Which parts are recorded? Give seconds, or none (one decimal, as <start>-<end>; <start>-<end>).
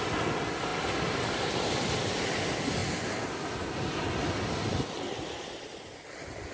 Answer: 0.0-6.5